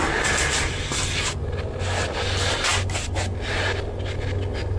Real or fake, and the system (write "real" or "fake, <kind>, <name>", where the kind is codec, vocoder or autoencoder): real